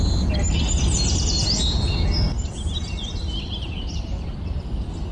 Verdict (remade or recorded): recorded